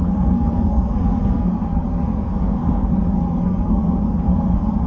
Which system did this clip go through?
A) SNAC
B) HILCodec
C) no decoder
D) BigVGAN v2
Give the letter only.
A